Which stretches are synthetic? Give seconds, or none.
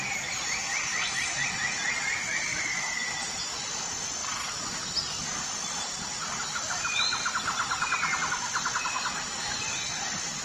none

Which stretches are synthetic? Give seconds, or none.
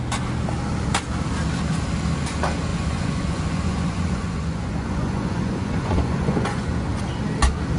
2.7-7.0 (vocoder, Vocos)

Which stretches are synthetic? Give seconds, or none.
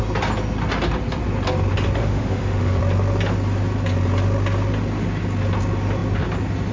2.0-2.8 (autoencoder, DAC-VAE)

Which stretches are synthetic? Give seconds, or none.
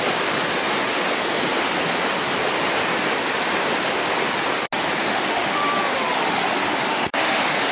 5.1-5.6 (autoencoder, DAC-VAE); 6.7-7.7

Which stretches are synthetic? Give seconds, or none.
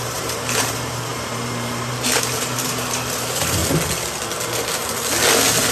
0.0-3.6 (vocoder, BigVGAN v2)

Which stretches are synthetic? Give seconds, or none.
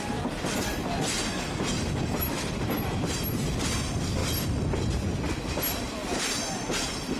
none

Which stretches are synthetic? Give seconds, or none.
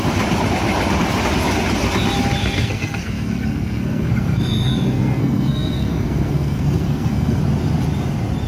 2.4-7.4 (codec, SNAC)